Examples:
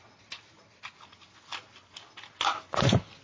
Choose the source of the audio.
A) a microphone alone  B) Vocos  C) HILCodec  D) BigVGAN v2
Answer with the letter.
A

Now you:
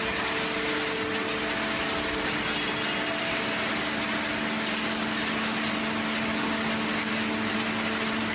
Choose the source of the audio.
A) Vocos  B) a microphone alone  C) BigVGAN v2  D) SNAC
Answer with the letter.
B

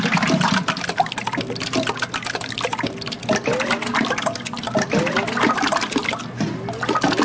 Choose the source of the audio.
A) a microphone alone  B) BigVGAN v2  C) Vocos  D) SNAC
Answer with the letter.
A